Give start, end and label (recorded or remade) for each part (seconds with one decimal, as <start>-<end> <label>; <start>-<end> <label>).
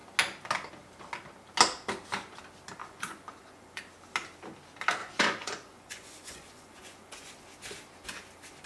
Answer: 0.0-2.8 recorded; 2.8-3.8 remade; 3.8-5.0 recorded; 5.0-7.3 remade; 7.3-8.7 recorded